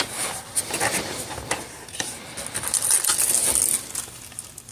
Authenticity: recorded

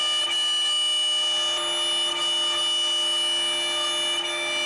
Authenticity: recorded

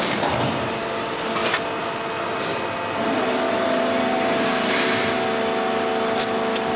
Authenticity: recorded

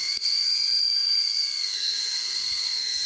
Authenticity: remade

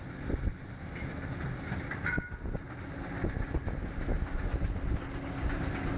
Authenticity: recorded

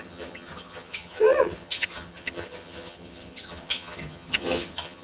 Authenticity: remade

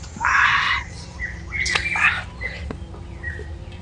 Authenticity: recorded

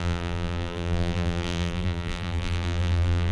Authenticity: remade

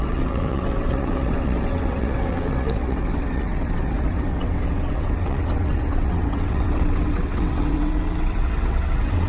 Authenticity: remade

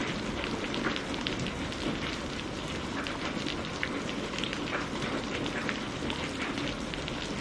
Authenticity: remade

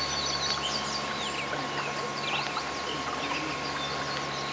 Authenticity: recorded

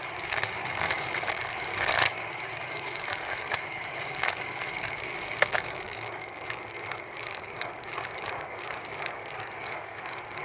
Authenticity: remade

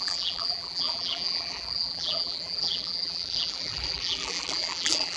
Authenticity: remade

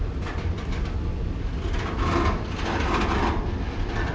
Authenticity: recorded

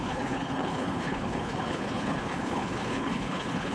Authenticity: remade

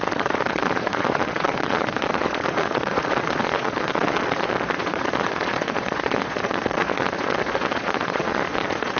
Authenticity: remade